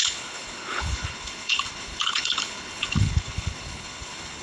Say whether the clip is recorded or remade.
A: remade